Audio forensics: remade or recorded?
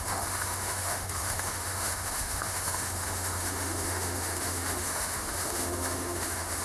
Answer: remade